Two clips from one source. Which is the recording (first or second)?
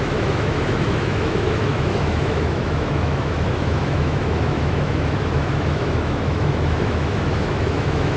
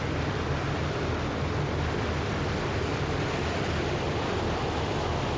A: second